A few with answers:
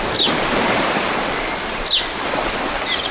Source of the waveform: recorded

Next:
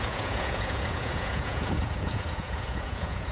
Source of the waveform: remade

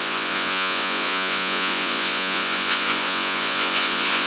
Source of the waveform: remade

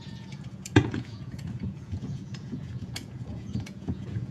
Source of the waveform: remade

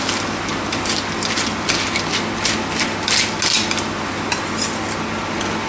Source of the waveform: recorded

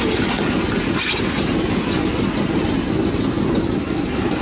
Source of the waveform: recorded